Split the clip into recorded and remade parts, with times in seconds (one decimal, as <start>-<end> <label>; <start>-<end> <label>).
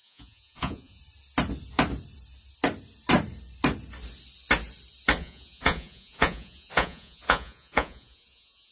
0.0-1.0 remade; 1.0-5.2 recorded; 5.2-8.7 remade